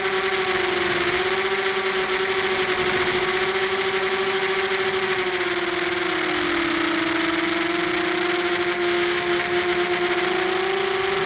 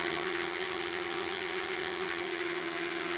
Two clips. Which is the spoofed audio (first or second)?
second